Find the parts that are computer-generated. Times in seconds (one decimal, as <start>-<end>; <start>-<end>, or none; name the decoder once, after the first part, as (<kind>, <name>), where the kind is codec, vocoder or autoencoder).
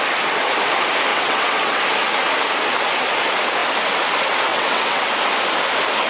1.1-1.8 (vocoder, WaveNeXt); 4.5-5.1